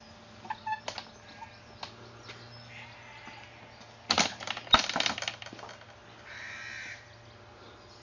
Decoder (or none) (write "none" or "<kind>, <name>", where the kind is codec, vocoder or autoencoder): none